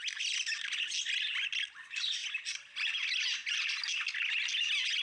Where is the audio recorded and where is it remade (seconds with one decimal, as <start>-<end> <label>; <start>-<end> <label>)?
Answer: 0.0-5.0 recorded